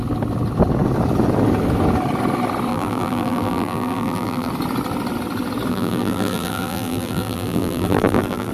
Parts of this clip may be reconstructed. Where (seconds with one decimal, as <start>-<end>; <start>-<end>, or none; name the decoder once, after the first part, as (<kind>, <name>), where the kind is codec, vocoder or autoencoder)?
2.7-4.5 (vocoder, BigVGAN v2); 5.7-8.5